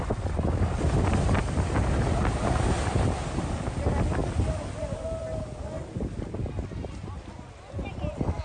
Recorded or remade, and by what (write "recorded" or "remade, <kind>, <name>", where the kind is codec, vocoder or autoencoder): recorded